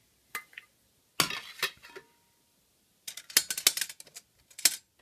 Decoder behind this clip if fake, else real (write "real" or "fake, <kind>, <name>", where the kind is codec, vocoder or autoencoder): real